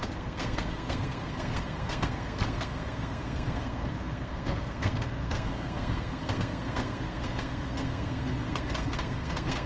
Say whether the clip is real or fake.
fake